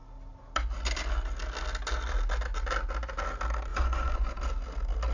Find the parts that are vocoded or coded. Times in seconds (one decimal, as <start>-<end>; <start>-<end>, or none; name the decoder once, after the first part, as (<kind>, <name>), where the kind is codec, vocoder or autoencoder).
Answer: 3.7-4.4 (vocoder, Vocos)